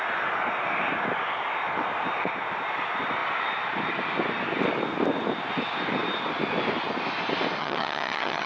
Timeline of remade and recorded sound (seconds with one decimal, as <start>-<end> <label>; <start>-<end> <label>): 0.0-7.6 recorded; 7.6-8.5 remade